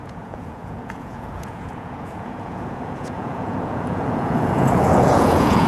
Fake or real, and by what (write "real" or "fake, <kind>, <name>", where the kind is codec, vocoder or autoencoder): fake, vocoder, Vocos